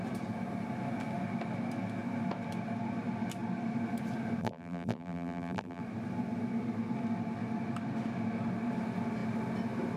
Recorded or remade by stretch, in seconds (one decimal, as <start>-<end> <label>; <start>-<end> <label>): 0.0-4.4 recorded; 4.4-5.8 remade; 5.8-10.0 recorded